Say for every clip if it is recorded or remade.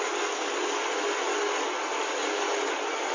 recorded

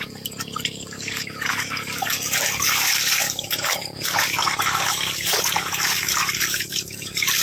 remade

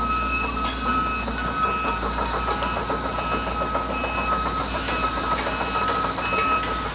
recorded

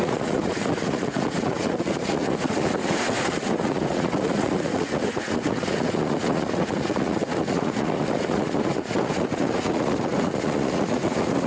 remade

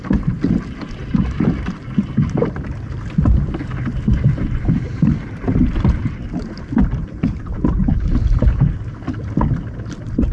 recorded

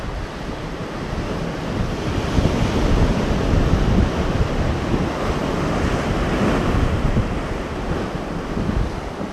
recorded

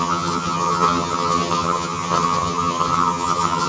remade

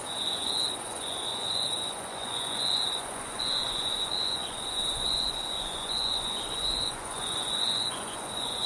remade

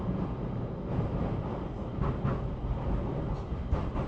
recorded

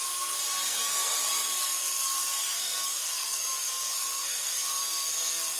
remade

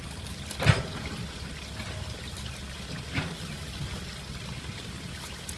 recorded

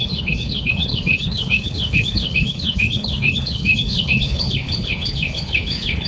remade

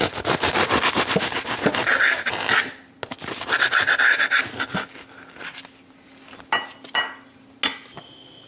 recorded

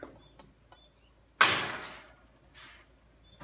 recorded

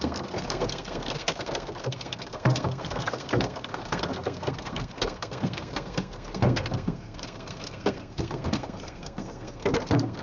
remade